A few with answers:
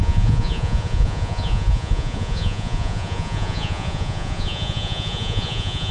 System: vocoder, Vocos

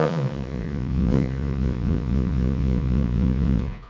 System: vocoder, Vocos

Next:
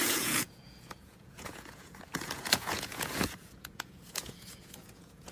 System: vocoder, Vocos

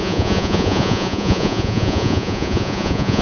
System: vocoder, Vocos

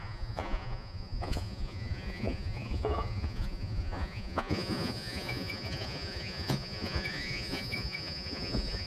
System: vocoder, Vocos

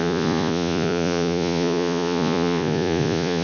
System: vocoder, Vocos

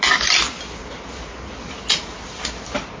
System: none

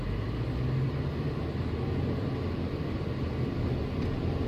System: none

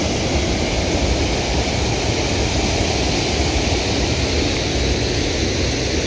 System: none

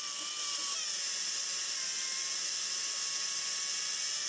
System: none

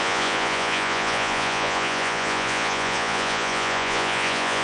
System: vocoder, Vocos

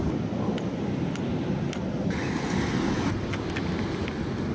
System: none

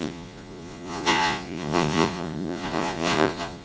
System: vocoder, Vocos